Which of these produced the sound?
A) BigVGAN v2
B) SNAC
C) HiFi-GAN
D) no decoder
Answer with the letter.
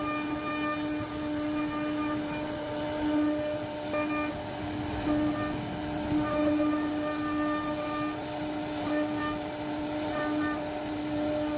D